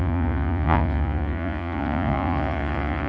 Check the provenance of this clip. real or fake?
fake